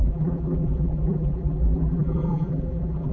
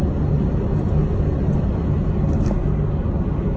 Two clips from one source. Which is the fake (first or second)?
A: first